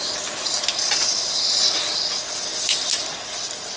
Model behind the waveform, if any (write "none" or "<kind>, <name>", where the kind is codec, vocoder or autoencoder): none